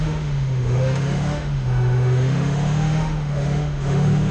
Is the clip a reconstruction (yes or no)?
yes